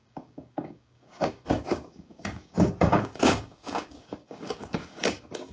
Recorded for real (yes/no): no